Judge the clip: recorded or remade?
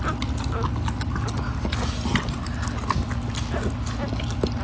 recorded